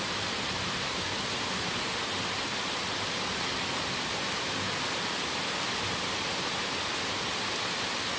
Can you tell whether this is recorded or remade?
recorded